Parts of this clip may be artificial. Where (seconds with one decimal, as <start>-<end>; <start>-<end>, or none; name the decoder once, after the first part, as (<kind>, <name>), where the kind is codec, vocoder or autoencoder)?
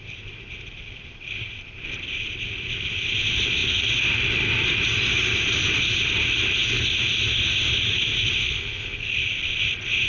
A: 8.4-9.1 (codec, SNAC)